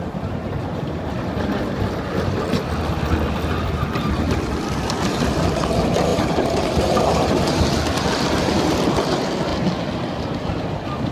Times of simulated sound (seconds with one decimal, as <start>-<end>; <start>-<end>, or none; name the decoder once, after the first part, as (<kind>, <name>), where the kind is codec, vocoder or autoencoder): 6.1-7.6 (vocoder, BigVGAN v2)